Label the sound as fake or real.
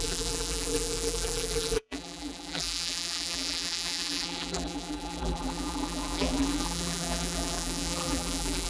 fake